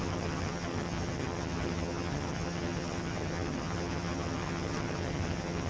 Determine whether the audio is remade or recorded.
remade